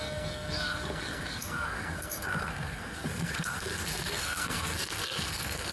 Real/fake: fake